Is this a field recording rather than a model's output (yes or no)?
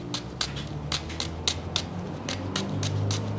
yes